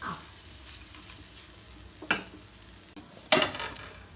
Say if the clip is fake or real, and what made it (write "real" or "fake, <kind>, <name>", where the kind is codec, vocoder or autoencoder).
real